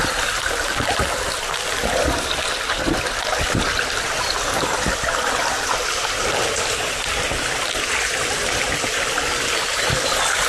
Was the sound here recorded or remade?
recorded